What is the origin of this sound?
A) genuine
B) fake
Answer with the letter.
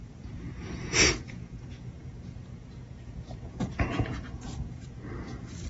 B